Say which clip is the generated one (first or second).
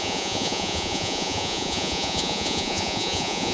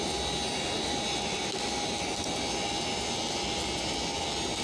first